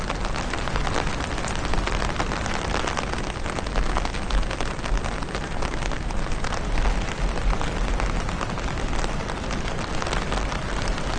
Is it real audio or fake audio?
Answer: real